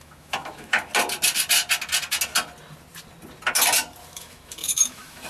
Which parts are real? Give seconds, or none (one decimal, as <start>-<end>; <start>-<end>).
0.9-4.1